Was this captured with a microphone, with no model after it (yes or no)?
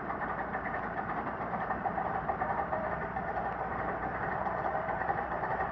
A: no